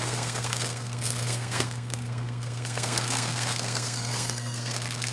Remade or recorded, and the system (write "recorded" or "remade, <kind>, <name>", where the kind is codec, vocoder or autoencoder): remade, codec, SNAC